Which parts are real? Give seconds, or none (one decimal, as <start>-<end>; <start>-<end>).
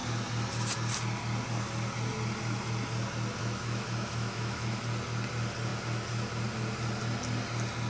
0.0-3.4; 4.8-7.9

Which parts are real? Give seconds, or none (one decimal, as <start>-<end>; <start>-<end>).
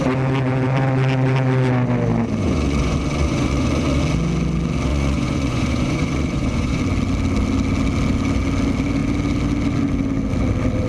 0.0-2.4; 4.0-4.9; 6.8-10.9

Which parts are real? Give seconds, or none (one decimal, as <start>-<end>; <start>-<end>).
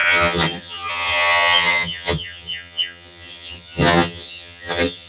none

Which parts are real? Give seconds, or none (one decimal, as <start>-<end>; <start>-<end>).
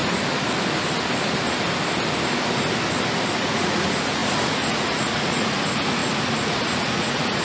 0.0-3.3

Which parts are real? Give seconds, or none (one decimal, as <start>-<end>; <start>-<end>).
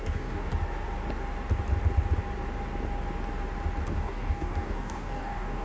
0.5-3.9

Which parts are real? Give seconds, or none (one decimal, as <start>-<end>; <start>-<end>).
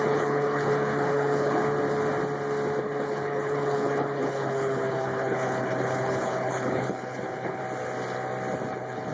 1.6-2.8; 7.6-8.7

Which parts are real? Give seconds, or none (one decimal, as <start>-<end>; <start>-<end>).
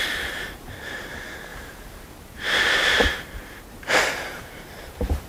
none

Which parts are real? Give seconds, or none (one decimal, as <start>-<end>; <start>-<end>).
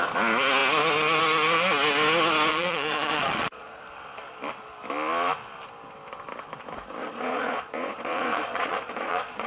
0.0-2.5; 3.8-7.0